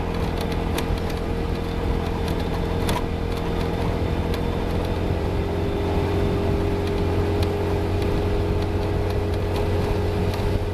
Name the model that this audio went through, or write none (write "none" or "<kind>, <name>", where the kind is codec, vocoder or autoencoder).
none